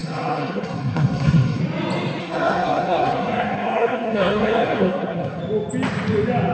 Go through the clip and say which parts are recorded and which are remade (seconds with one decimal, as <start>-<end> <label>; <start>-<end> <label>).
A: 0.0-1.6 remade; 1.6-2.2 recorded; 2.2-5.4 remade; 5.4-6.5 recorded